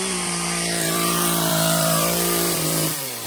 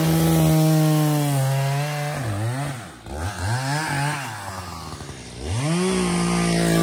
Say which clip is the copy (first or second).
first